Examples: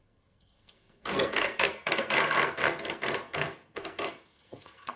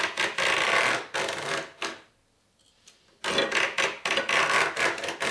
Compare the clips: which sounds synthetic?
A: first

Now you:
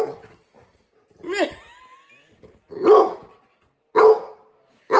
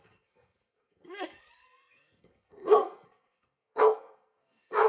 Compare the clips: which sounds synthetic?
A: second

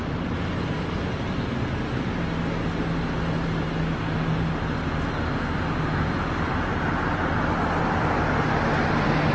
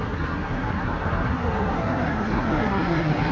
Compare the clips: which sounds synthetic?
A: second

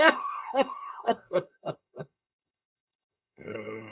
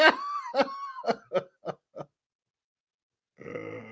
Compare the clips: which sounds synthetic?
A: first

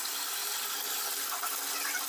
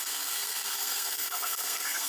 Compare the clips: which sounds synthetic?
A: second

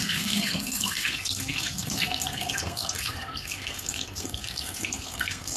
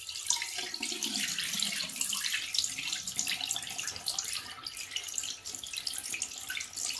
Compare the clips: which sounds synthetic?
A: first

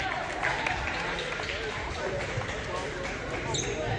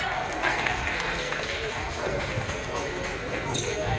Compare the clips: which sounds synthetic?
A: second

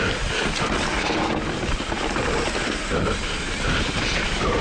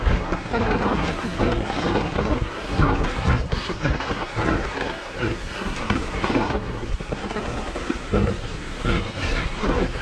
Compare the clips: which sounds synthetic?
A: second